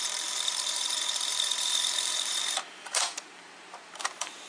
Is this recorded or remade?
remade